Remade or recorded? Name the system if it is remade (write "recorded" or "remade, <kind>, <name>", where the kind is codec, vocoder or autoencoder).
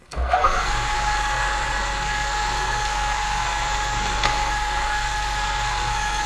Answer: remade, codec, SNAC